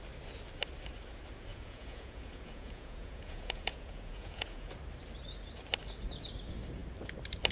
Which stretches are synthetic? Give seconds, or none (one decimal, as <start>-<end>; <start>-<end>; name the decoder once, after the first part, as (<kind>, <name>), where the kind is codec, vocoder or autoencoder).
1.5-4.7 (vocoder, Vocos)